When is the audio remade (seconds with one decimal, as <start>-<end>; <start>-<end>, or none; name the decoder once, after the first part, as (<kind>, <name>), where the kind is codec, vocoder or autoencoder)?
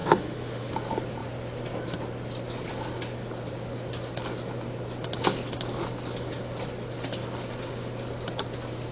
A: 0.0-0.7 (autoencoder, DAC-VAE)